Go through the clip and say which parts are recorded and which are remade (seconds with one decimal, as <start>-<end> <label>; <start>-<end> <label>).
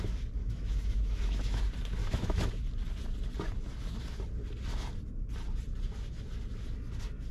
0.0-0.4 recorded; 0.4-1.6 remade; 1.6-2.0 recorded; 2.0-2.5 remade; 2.5-7.3 recorded